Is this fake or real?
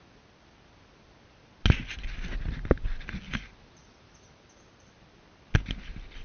real